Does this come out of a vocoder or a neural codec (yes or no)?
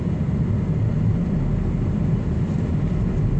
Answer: no